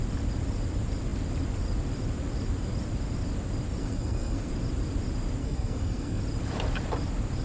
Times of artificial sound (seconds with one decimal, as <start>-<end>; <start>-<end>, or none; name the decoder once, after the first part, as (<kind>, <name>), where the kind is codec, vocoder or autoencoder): 3.8-4.5 (codec, SNAC); 5.4-6.2